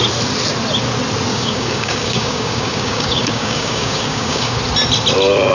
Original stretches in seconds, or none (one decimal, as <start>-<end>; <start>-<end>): 0.0-1.3; 4.6-5.5